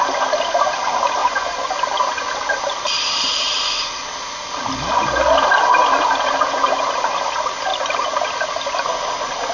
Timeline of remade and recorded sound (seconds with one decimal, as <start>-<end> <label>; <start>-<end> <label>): 0.0-1.2 recorded; 1.2-1.7 remade; 1.7-9.5 recorded